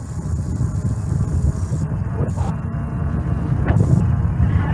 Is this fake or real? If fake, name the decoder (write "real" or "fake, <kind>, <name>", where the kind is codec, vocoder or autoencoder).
real